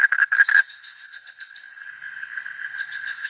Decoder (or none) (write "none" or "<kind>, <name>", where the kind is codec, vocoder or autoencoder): codec, SNAC